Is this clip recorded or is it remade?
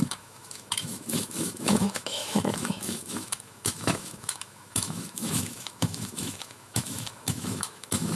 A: remade